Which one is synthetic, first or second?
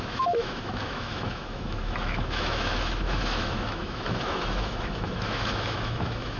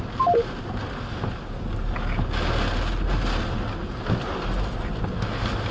first